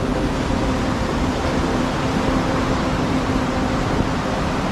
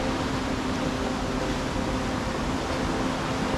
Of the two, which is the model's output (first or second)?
first